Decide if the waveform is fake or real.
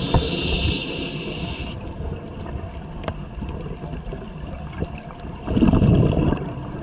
real